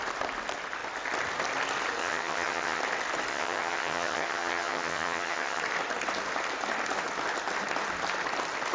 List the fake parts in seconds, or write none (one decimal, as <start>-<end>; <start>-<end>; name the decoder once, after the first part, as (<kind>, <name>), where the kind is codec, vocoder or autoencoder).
2.0-2.8 (vocoder, HiFi-GAN); 3.3-5.6